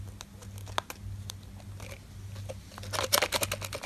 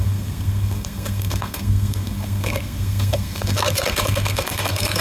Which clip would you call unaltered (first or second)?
first